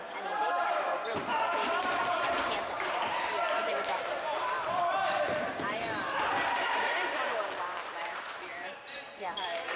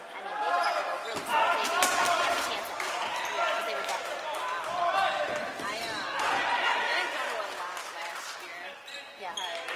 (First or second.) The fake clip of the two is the first